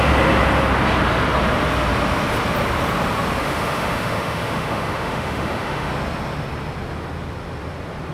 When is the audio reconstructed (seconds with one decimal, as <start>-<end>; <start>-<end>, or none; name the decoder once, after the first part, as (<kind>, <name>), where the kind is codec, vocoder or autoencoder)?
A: 3.4-5.9 (autoencoder, DAC-VAE)